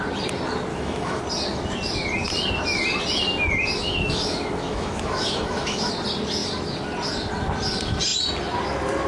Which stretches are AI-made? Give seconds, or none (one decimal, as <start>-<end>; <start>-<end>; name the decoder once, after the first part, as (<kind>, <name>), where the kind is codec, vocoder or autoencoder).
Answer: 0.7-1.2 (autoencoder, DAC-VAE); 3.8-5.9